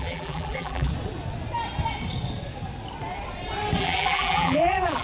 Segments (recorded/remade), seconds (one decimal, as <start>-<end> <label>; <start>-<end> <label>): 0.0-0.9 remade; 0.9-3.8 recorded; 3.8-5.0 remade